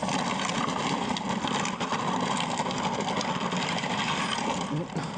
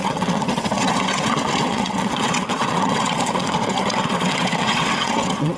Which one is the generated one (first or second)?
second